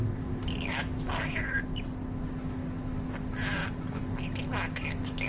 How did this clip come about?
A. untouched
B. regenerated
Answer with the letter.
A